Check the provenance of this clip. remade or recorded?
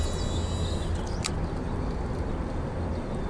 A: recorded